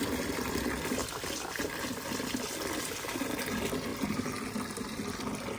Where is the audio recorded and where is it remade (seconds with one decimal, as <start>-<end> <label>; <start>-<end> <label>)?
0.0-5.6 recorded